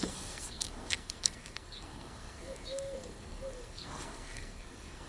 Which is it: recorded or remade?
remade